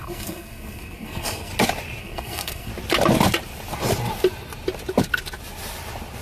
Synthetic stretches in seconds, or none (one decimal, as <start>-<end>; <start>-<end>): 0.0-1.5; 2.0-2.7